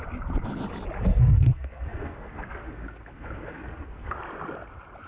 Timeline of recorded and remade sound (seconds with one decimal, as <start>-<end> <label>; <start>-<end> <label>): 0.0-1.1 recorded; 1.1-4.2 remade; 4.2-5.1 recorded